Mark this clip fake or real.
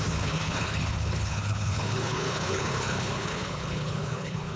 fake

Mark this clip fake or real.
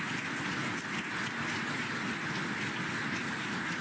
real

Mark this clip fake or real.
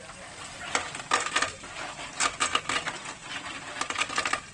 real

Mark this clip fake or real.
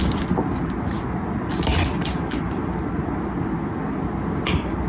real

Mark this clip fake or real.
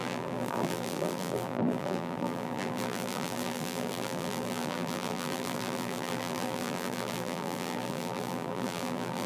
fake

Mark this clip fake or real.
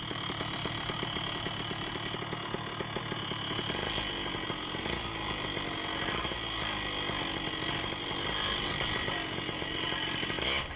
real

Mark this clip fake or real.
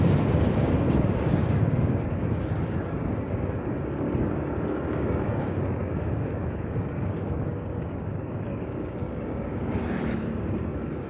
fake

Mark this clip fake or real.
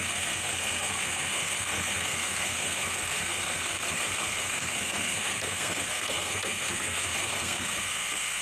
fake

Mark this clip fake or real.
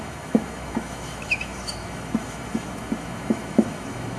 fake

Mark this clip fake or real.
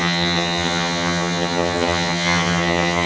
fake